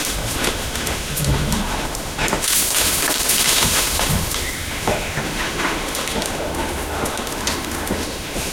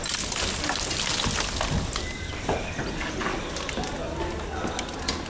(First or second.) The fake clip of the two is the first